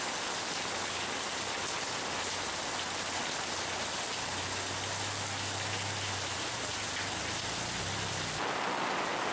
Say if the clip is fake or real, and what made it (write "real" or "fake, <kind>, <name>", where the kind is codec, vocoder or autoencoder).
real